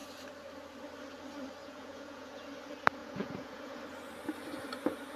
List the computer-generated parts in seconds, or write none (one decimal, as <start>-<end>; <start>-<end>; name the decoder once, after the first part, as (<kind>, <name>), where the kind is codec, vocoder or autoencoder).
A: 1.6-2.4 (vocoder, Vocos); 3.0-3.8